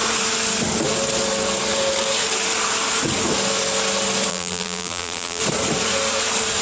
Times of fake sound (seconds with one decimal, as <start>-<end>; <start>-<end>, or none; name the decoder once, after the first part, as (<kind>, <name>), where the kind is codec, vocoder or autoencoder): 4.3-5.4 (vocoder, BigVGAN v2)